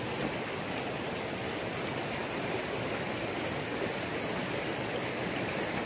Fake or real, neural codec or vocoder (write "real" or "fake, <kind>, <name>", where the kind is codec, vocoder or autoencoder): real